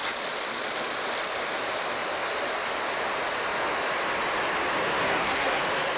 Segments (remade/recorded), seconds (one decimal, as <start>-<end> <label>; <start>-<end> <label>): 0.0-5.1 recorded; 5.1-5.6 remade; 5.6-6.0 recorded